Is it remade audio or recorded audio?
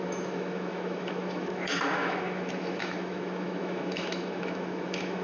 remade